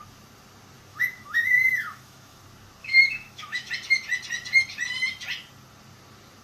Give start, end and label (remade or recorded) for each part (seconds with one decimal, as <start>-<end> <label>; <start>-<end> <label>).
0.0-0.9 recorded; 0.9-2.4 remade; 2.4-2.8 recorded; 2.8-3.7 remade; 3.7-6.4 recorded